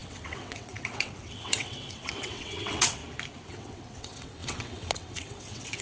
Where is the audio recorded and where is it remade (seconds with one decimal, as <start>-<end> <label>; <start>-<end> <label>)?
0.0-3.0 remade; 3.0-3.5 recorded; 3.5-5.8 remade